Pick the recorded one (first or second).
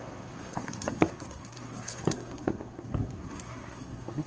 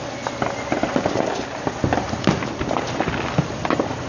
second